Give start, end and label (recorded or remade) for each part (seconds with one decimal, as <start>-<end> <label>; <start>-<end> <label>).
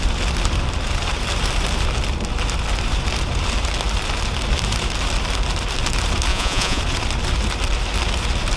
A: 0.0-6.3 recorded; 6.3-6.8 remade; 6.8-8.6 recorded